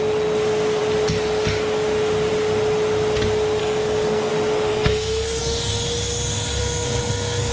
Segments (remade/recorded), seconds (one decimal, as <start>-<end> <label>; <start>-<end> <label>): 0.0-3.6 recorded; 3.6-4.3 remade; 4.3-4.7 recorded; 4.7-5.4 remade; 5.4-6.6 recorded; 6.6-7.5 remade